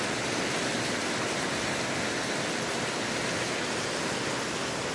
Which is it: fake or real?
real